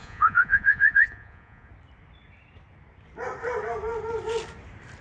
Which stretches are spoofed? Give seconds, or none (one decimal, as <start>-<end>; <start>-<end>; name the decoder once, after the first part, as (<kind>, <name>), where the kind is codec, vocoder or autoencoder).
0.0-1.7 (vocoder, Vocos)